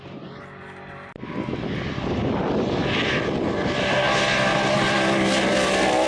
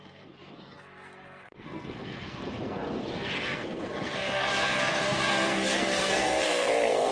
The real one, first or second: first